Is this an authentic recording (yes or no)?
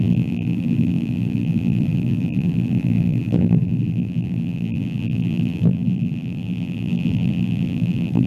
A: no